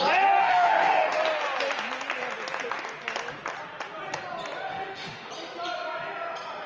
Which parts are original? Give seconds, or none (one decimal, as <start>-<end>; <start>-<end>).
0.0-0.4; 1.2-4.7; 5.3-6.7